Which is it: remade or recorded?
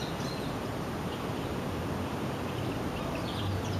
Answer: remade